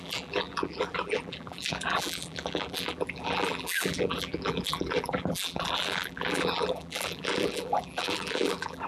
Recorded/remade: remade